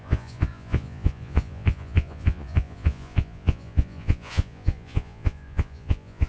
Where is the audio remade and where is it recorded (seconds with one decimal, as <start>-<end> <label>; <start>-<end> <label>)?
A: 0.0-6.3 remade